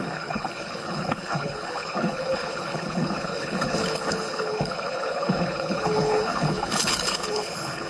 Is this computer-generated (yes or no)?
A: yes